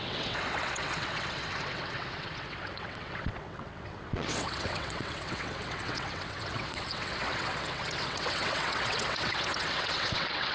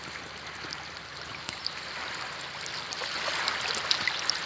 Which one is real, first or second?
second